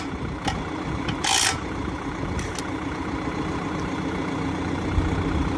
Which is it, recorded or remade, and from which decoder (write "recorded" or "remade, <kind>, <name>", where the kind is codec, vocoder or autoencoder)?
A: recorded